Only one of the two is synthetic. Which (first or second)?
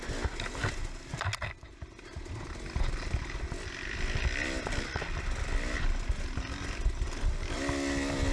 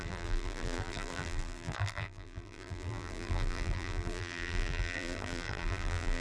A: second